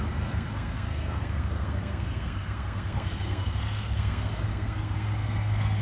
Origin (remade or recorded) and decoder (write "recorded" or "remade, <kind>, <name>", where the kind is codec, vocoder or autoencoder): remade, codec, SNAC